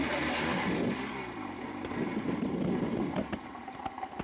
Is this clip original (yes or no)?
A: no